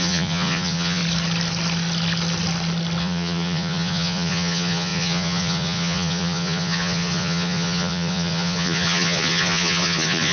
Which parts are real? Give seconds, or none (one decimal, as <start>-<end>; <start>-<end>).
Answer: 1.0-3.0